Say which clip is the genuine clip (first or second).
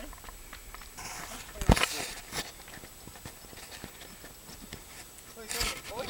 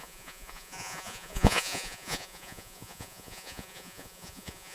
first